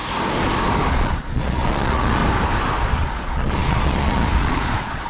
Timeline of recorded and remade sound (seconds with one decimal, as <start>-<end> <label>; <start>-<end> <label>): 0.0-0.9 recorded; 0.9-2.2 remade; 2.2-2.9 recorded; 2.9-5.1 remade